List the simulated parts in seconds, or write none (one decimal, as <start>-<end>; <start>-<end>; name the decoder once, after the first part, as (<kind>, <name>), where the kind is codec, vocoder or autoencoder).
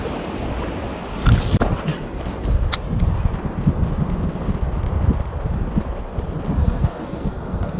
6.6-7.8 (codec, SNAC)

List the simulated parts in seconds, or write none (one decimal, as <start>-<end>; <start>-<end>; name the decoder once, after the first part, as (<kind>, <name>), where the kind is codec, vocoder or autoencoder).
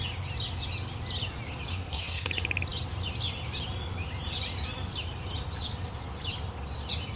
1.7-2.3 (codec, SNAC)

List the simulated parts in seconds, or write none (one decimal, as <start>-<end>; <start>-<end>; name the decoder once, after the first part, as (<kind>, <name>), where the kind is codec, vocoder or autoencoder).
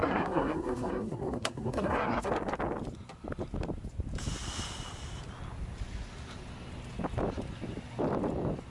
0.0-2.3 (codec, SNAC)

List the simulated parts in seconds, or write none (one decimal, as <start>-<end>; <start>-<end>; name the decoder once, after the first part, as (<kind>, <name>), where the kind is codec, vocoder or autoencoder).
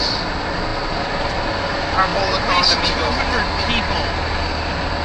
none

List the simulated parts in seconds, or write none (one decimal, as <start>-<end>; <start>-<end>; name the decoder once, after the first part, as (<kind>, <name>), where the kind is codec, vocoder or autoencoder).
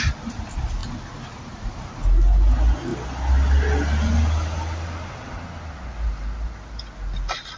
none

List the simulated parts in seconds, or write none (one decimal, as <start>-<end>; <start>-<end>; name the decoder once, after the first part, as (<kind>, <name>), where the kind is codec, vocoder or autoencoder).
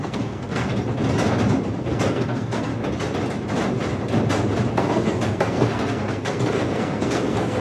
0.0-0.7 (codec, SNAC); 1.8-2.7; 4.7-7.6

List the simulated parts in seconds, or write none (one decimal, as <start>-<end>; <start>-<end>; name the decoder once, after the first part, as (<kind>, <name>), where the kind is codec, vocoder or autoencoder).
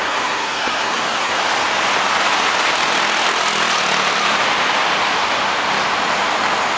0.0-1.4 (codec, SNAC)